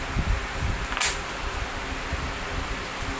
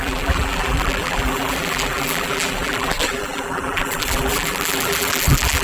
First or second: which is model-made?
second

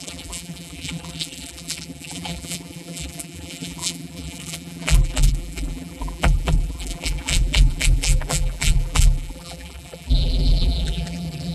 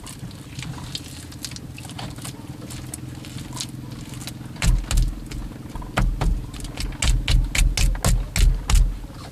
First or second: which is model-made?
first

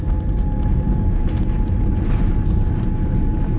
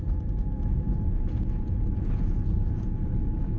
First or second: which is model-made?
second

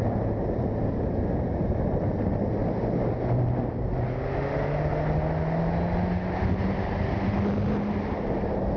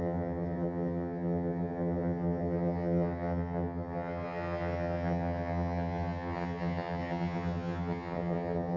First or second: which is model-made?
second